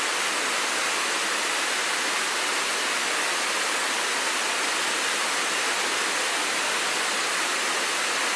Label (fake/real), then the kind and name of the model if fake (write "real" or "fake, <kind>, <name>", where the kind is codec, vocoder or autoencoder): real